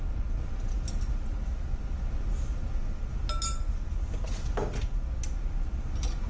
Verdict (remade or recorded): recorded